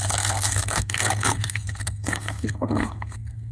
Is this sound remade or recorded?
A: remade